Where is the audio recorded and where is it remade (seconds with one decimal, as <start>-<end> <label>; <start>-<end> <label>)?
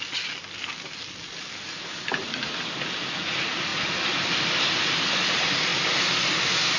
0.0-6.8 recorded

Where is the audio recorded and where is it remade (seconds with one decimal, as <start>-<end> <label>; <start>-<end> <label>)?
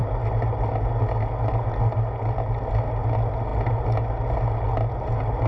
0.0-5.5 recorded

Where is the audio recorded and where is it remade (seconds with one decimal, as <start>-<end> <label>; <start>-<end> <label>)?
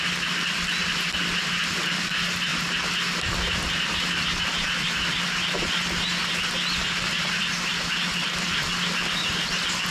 0.0-9.9 recorded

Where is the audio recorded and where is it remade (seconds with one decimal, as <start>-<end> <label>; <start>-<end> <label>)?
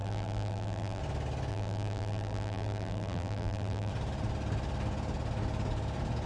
0.0-1.0 remade; 1.0-1.5 recorded; 1.5-3.9 remade; 3.9-6.3 recorded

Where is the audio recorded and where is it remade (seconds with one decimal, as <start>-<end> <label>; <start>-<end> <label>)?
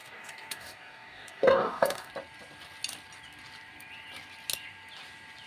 0.0-2.1 remade; 2.1-5.5 recorded